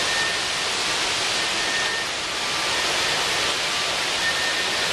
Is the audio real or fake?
real